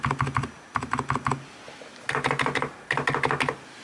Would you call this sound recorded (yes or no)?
yes